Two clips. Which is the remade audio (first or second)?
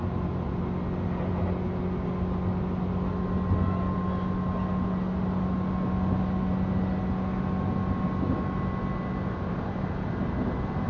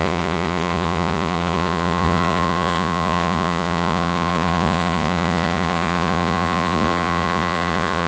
second